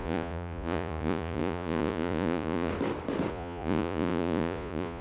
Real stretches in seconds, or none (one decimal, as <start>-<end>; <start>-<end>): 2.7-3.3